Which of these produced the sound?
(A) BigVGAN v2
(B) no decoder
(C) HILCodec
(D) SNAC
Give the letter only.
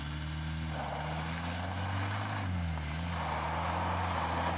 B